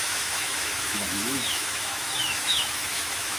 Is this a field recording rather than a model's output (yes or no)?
no